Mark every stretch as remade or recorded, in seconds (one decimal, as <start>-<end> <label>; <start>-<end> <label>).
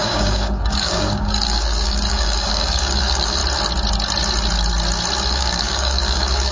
0.0-3.4 remade; 3.4-5.3 recorded; 5.3-6.5 remade